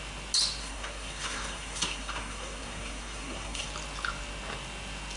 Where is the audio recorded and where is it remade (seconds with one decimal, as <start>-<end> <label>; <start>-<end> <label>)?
0.0-0.6 recorded; 0.6-3.7 remade; 3.7-5.2 recorded